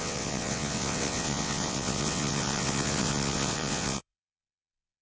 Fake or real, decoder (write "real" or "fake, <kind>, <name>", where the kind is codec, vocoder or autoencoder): fake, vocoder, WaveNeXt